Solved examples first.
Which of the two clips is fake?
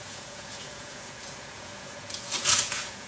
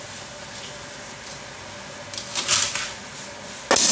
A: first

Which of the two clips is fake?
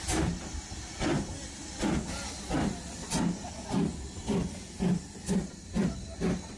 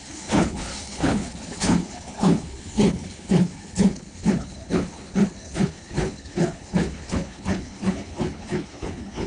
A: second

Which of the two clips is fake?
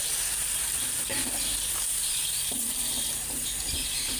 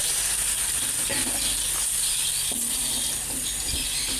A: first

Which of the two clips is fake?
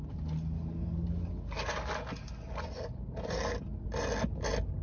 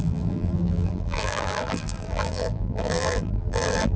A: second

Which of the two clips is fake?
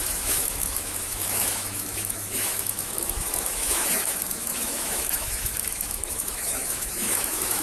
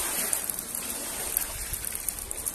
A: first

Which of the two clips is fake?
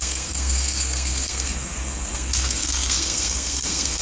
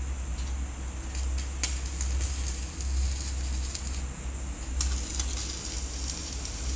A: first